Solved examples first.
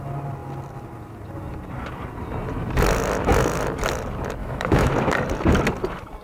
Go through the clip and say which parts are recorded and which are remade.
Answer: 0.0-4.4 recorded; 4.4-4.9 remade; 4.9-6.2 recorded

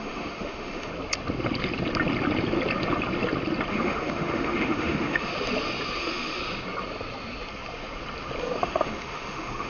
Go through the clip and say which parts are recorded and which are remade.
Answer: 0.0-0.9 remade; 0.9-3.7 recorded; 3.7-5.3 remade; 5.3-6.0 recorded; 6.0-6.4 remade; 6.4-8.4 recorded; 8.4-9.7 remade

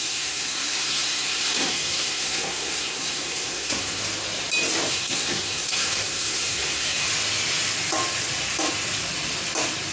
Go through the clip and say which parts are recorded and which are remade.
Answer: 0.0-4.0 remade; 4.0-4.9 recorded; 4.9-7.1 remade; 7.1-9.9 recorded